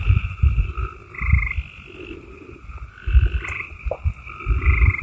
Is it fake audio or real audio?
real